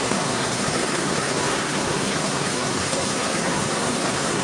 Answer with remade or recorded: remade